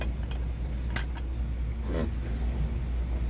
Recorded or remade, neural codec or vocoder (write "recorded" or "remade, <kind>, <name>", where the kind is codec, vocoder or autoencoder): recorded